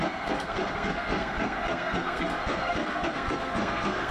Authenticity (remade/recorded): remade